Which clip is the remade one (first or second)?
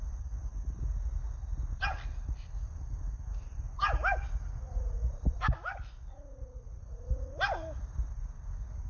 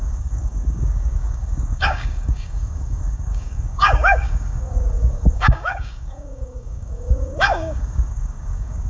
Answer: second